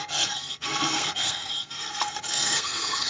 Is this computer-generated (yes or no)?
yes